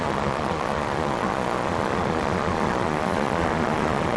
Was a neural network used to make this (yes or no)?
yes